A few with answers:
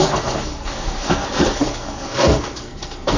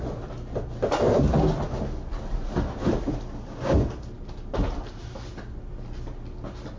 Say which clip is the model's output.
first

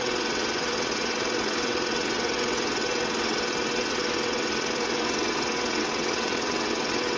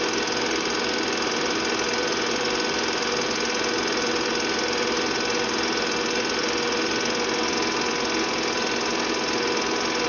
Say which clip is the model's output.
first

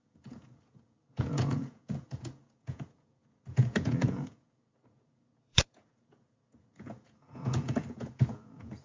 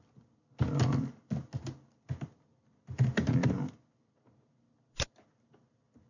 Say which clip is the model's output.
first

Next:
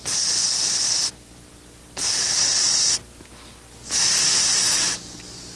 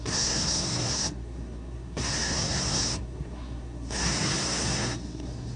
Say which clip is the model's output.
second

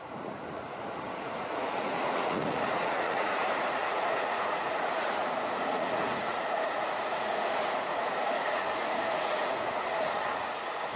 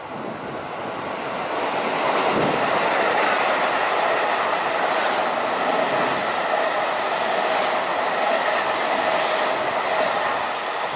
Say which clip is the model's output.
first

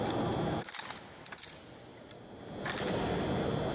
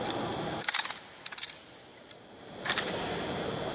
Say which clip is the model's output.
second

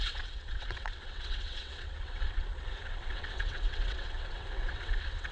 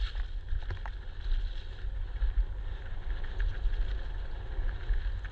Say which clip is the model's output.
first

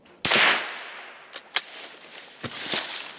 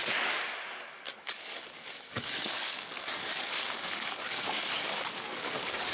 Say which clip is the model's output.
second